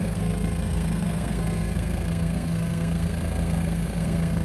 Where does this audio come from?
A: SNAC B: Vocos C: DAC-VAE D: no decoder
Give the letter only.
A